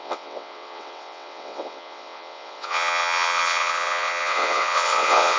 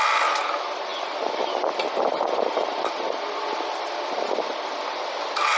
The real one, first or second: second